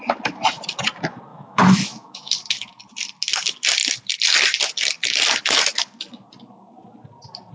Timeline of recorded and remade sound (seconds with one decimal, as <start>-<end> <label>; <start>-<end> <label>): 0.0-1.3 recorded; 1.3-2.3 remade; 2.3-7.5 recorded